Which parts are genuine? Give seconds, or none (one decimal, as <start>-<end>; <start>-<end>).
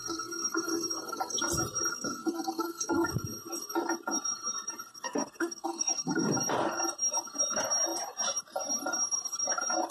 1.4-1.9; 3.1-4.9; 6.3-9.9